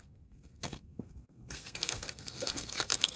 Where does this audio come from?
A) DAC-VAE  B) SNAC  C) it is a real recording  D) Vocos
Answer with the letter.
B